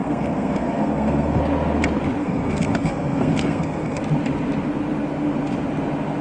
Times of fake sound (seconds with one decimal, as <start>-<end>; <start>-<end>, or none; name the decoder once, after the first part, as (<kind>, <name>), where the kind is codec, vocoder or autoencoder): 0.0-1.4 (codec, SNAC); 2.2-4.0